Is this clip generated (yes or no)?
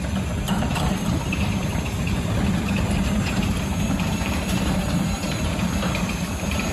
yes